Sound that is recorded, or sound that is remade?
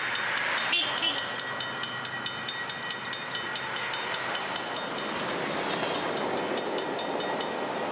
recorded